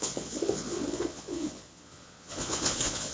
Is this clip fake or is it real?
fake